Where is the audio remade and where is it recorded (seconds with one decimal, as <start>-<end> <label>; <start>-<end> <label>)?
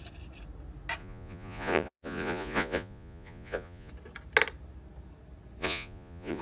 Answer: 0.0-1.0 recorded; 1.0-3.9 remade; 3.9-5.6 recorded; 5.6-6.4 remade